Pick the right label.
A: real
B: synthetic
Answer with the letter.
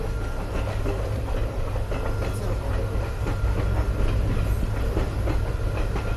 A